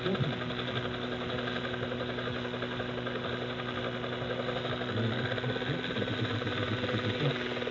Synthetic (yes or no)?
no